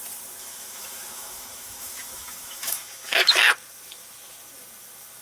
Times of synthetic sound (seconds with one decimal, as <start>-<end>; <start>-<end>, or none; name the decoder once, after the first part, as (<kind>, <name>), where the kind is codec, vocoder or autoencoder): 0.4-3.3 (autoencoder, DAC-VAE)